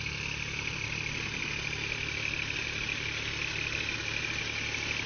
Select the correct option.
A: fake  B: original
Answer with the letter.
B